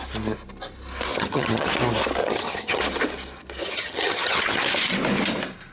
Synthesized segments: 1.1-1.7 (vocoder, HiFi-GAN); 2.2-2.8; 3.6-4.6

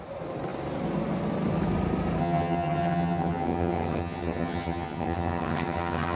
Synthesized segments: 2.2-6.2 (vocoder, HiFi-GAN)

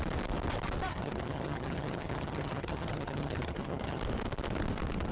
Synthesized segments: 0.9-4.0 (vocoder, HiFi-GAN)

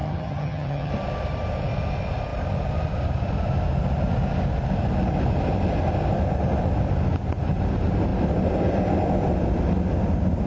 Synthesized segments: 0.0-0.9 (vocoder, HiFi-GAN)

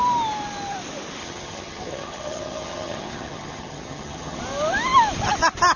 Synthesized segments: 1.2-4.4 (vocoder, HiFi-GAN)